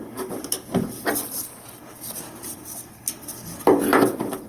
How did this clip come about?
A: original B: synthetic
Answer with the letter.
A